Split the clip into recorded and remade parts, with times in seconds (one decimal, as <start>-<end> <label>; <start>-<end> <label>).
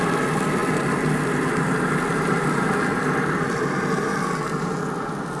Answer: 0.0-5.4 recorded